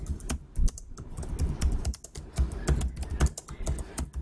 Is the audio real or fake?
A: real